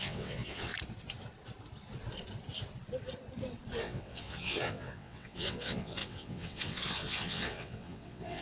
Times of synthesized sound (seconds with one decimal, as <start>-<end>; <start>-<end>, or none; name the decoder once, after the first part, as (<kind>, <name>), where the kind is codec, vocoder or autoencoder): 0.0-0.7 (vocoder, WaveNeXt); 3.8-8.4